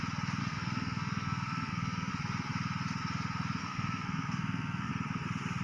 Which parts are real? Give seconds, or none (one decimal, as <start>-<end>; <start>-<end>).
0.0-0.4; 2.1-3.6; 4.9-5.6